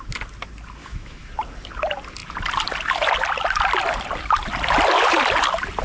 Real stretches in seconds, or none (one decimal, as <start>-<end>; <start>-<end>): 0.0-0.8; 1.3-5.8

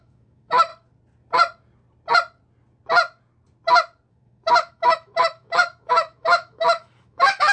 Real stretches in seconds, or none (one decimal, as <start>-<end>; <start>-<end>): 0.7-4.1

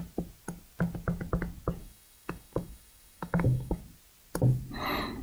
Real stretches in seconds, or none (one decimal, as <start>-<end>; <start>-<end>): 0.0-1.8; 3.8-5.2

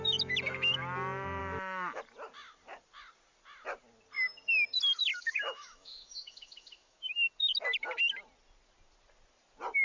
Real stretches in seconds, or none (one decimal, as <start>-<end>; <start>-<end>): 0.0-1.4; 2.0-5.1; 7.1-9.8

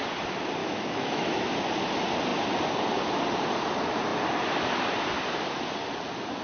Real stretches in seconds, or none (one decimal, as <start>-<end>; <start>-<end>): 0.0-0.6; 1.5-6.4

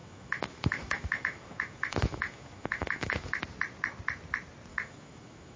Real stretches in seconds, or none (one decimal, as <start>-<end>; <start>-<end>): 3.4-4.7